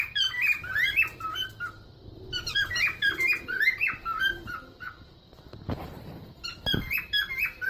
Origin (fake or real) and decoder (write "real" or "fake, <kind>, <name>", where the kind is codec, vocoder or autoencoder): fake, vocoder, BigVGAN v2